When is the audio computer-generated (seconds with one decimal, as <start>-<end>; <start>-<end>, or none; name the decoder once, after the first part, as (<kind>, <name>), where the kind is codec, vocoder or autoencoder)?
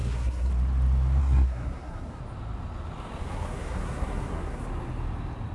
0.0-0.5 (codec, SNAC); 1.2-2.2; 3.2-4.6